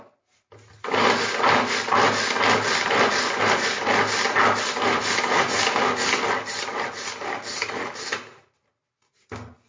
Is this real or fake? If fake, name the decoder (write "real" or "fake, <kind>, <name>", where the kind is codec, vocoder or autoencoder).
real